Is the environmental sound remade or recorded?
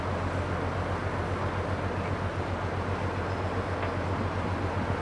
recorded